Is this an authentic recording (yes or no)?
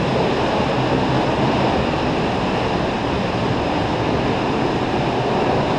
yes